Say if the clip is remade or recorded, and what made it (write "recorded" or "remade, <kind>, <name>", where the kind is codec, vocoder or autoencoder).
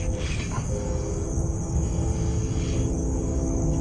remade, codec, DAC